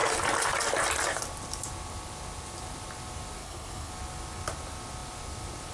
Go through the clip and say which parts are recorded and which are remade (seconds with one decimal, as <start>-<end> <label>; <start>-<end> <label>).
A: 0.0-3.4 recorded; 3.4-3.9 remade; 3.9-5.7 recorded